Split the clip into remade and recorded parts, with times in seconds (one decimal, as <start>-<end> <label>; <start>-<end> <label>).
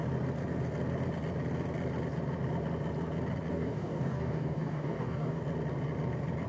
0.0-3.5 recorded; 3.5-5.4 remade; 5.4-6.5 recorded